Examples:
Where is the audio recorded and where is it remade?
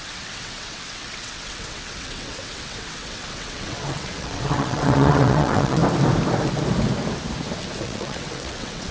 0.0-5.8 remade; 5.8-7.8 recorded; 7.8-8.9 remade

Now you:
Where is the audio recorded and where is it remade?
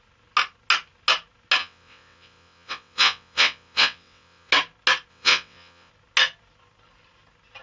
0.0-1.6 recorded; 1.6-4.5 remade; 4.5-5.1 recorded; 5.1-5.9 remade; 5.9-7.6 recorded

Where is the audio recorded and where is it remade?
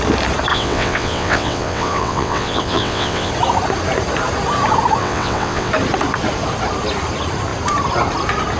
0.0-0.5 recorded; 0.5-3.3 remade; 3.3-5.0 recorded; 5.0-5.7 remade; 5.7-8.6 recorded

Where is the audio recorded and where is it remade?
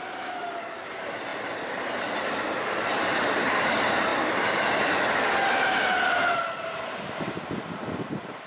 0.0-8.5 recorded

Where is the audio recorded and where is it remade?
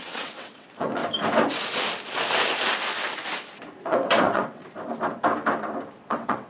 0.0-1.0 remade; 1.0-3.8 recorded; 3.8-4.6 remade; 4.6-6.1 recorded; 6.1-6.5 remade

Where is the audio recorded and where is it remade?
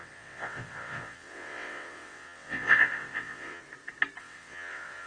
0.0-3.6 remade; 3.6-4.2 recorded; 4.2-5.1 remade